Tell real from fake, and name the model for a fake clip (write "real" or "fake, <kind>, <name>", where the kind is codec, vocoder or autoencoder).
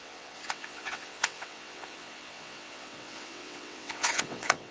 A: fake, vocoder, WaveNeXt